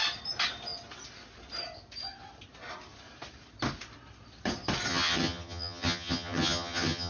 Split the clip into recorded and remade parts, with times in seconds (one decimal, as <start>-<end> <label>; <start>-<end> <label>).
0.0-4.9 recorded; 4.9-7.1 remade